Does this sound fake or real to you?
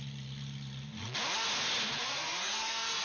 real